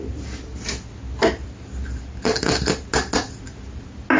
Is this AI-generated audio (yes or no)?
no